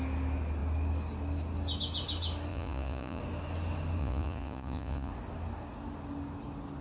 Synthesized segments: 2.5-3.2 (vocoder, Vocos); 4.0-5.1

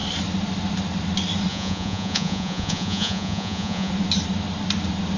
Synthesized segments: 1.5-3.9 (vocoder, Vocos)